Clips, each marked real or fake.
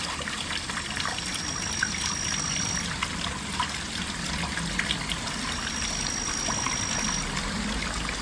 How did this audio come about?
real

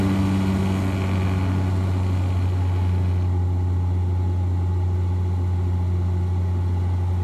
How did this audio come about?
real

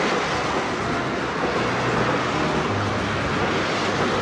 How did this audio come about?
real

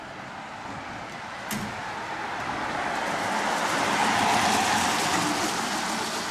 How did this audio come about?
real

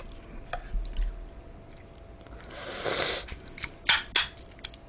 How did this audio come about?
real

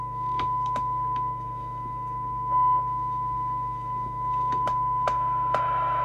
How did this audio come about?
fake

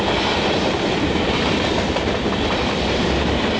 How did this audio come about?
real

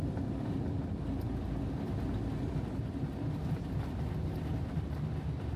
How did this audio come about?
real